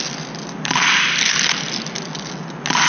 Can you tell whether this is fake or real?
real